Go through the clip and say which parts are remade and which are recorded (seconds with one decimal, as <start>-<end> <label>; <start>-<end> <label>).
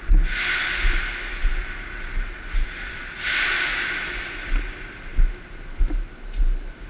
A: 0.0-6.9 recorded